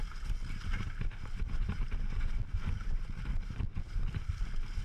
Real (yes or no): yes